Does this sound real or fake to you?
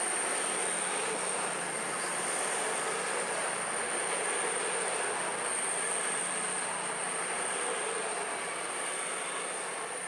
real